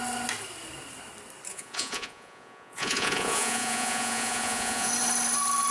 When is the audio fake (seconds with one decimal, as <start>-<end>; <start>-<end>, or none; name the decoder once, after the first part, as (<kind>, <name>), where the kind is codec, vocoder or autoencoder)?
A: 1.5-4.9 (vocoder, Vocos)